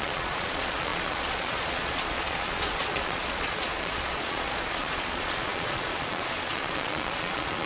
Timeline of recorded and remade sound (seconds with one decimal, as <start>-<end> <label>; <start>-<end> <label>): 0.0-7.7 remade